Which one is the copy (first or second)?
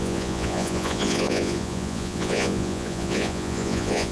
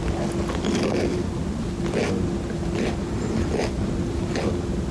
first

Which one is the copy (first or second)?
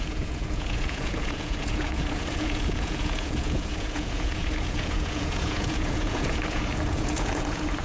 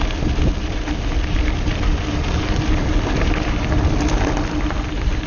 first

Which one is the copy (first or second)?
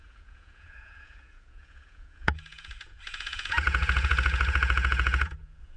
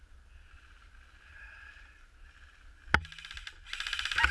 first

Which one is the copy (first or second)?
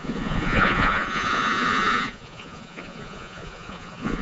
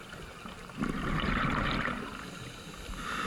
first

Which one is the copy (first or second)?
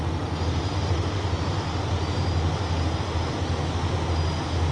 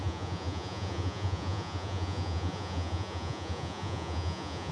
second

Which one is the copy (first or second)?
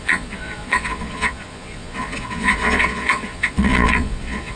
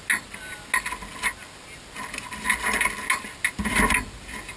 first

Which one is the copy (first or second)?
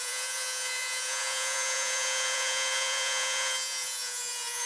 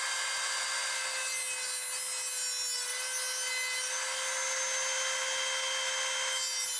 first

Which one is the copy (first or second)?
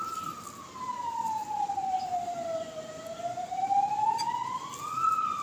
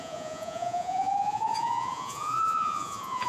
second